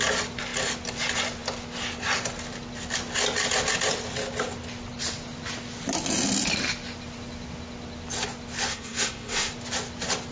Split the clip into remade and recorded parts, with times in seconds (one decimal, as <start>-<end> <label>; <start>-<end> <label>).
0.0-8.7 recorded; 8.7-9.5 remade; 9.5-10.3 recorded